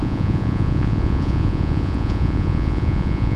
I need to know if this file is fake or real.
fake